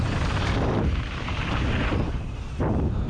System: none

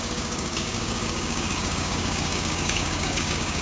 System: codec, DAC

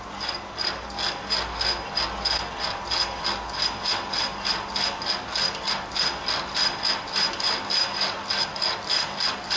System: none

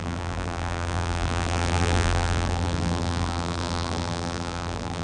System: vocoder, BigVGAN v2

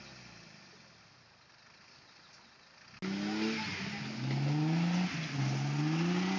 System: none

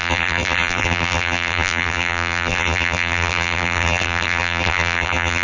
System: vocoder, BigVGAN v2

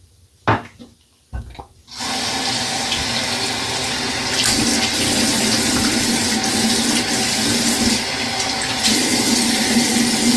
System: none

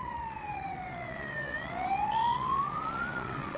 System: vocoder, WaveNeXt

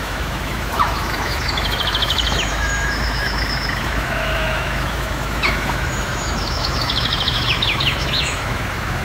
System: autoencoder, DAC-VAE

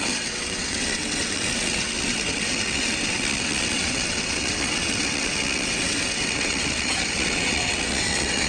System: vocoder, WaveNeXt